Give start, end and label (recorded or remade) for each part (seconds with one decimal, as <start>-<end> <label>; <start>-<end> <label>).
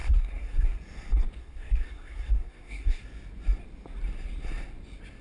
0.0-0.8 remade; 0.8-1.4 recorded; 1.4-3.0 remade; 3.0-5.2 recorded